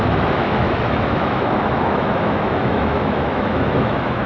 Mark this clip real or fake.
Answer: fake